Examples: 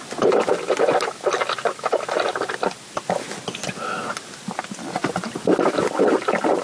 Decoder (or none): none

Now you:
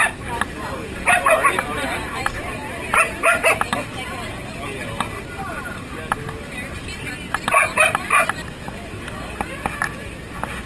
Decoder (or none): none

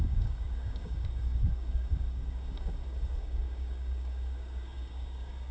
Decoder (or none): codec, DAC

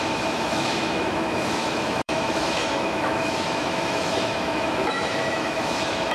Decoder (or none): autoencoder, DAC-VAE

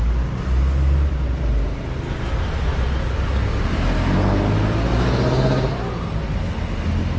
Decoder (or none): none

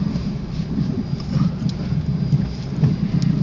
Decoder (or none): none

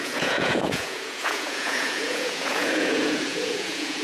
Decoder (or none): vocoder, Vocos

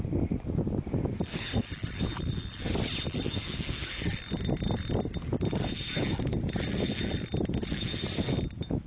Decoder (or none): none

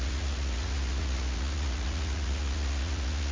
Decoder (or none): vocoder, Vocos